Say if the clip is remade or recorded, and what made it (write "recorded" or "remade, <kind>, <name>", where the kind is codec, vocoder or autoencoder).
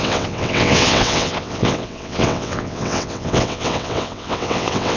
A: remade, vocoder, WaveNeXt